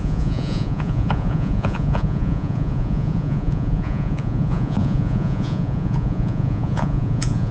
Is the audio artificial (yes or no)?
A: yes